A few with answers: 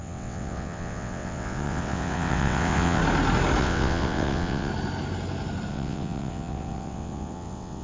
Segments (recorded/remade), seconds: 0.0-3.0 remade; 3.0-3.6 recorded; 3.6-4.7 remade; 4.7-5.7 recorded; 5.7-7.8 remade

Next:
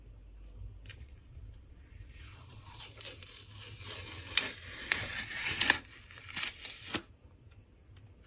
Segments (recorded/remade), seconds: 0.0-0.9 recorded; 0.9-2.8 remade; 2.8-4.8 recorded; 4.8-5.7 remade; 5.7-8.3 recorded